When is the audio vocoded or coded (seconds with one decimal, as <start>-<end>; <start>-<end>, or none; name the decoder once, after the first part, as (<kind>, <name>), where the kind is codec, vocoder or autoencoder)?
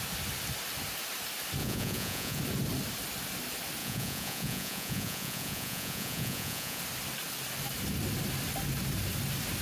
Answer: 1.6-2.4 (vocoder, Vocos); 3.8-6.8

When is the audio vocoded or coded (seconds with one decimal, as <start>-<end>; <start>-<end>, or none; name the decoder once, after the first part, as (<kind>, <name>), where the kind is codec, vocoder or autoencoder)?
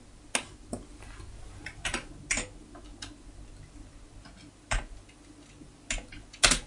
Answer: none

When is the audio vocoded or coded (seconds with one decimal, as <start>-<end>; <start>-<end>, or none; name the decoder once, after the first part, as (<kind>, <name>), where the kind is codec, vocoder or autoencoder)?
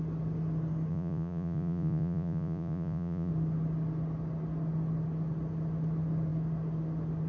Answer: 0.9-3.3 (vocoder, Vocos)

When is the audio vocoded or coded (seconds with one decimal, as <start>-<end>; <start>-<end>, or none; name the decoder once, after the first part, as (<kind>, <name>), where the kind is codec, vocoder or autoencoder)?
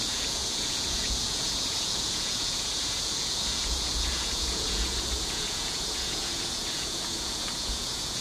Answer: 0.0-8.2 (vocoder, Vocos)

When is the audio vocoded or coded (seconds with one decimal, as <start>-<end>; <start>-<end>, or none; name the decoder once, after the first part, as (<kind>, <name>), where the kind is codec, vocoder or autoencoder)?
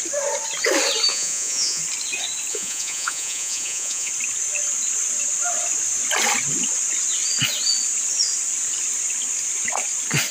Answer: 1.1-1.8 (vocoder, Vocos); 2.5-4.1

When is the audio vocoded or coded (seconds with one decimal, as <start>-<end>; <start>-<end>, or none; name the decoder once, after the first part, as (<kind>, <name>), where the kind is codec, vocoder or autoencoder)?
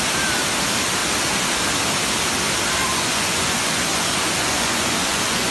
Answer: 2.9-5.5 (vocoder, Vocos)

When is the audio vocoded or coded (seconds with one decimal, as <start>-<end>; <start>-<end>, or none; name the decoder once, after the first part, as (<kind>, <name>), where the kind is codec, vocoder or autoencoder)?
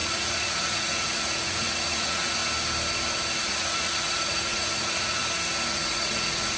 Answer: 0.0-2.4 (vocoder, Vocos); 3.4-5.2; 5.7-6.6